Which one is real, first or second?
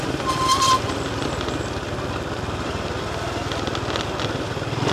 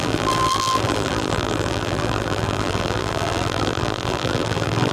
first